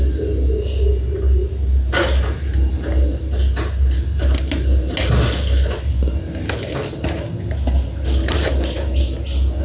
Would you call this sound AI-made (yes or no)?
no